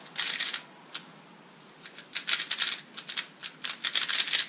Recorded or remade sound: recorded